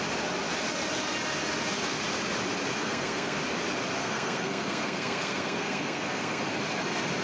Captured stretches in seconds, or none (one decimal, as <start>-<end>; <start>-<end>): 0.0-2.8; 3.4-4.0; 6.4-7.2

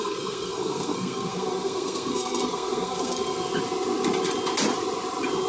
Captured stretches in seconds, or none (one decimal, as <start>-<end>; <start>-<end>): 3.5-5.5

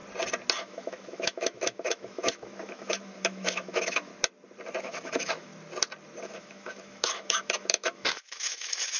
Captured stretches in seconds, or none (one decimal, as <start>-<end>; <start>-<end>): 0.0-0.6; 4.1-4.8; 5.5-6.2

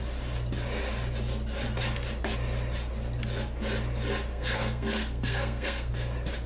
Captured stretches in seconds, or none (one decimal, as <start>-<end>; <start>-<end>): 0.0-4.3; 5.9-6.5